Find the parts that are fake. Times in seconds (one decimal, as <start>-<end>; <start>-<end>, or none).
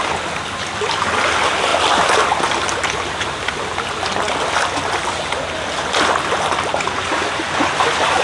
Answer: none